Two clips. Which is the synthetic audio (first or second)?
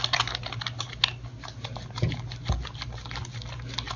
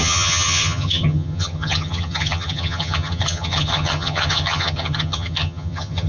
second